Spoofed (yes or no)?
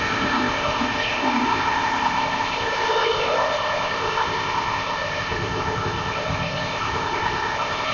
yes